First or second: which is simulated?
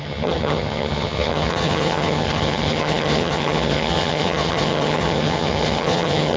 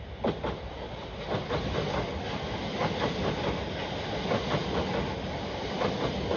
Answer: first